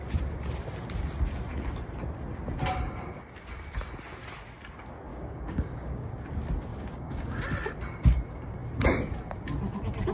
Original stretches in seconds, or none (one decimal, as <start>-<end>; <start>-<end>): 0.0-5.1; 6.1-6.7; 7.4-10.1